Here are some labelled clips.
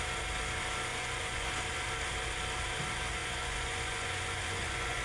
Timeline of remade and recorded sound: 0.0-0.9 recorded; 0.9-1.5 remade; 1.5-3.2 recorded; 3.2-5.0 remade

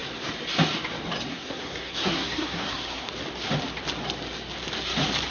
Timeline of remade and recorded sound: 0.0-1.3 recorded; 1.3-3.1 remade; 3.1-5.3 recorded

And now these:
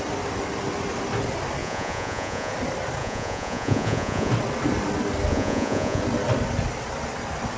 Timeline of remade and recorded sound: 0.0-1.6 recorded; 1.6-2.5 remade; 2.5-3.0 recorded; 3.0-4.3 remade; 4.3-5.3 recorded; 5.3-6.0 remade; 6.0-7.6 recorded

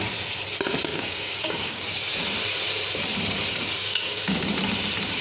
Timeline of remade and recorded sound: 0.0-0.9 recorded; 0.9-1.8 remade; 1.8-3.8 recorded; 3.8-4.4 remade; 4.4-5.2 recorded

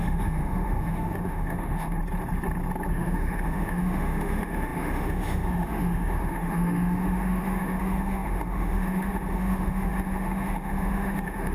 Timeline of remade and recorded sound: 0.0-2.0 remade; 2.0-2.9 recorded; 2.9-11.5 remade

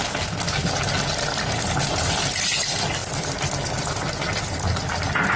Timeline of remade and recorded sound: 0.0-5.4 recorded